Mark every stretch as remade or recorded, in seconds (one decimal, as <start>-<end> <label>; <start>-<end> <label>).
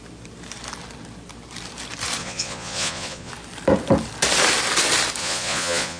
0.0-2.2 recorded; 2.2-3.3 remade; 3.3-5.2 recorded; 5.2-6.0 remade